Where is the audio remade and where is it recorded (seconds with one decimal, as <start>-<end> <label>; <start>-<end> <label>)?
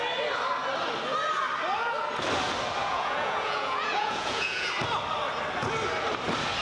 0.0-2.8 recorded; 2.8-4.7 remade; 4.7-6.6 recorded